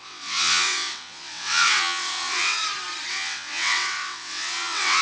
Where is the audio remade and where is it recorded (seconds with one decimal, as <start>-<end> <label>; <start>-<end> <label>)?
0.0-2.6 remade; 2.6-3.1 recorded; 3.1-5.0 remade